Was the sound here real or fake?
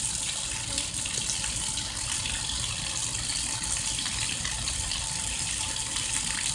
real